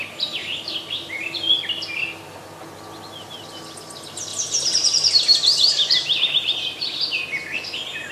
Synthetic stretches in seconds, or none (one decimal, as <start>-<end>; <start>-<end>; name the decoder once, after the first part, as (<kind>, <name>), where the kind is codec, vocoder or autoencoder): 0.4-1.4 (vocoder, BigVGAN v2); 4.3-7.2